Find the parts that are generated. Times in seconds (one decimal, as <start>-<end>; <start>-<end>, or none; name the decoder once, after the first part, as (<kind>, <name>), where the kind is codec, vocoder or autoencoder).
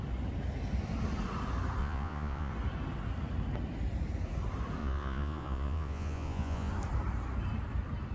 1.8-2.5 (vocoder, Vocos); 4.8-6.7